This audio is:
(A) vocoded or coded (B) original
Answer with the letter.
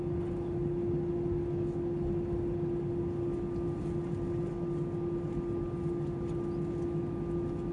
B